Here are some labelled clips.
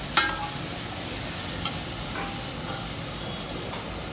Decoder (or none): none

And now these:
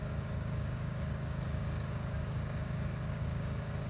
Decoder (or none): codec, DAC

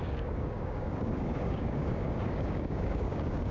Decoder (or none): codec, DAC